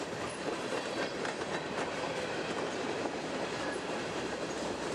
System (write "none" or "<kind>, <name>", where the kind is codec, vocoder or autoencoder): vocoder, BigVGAN v2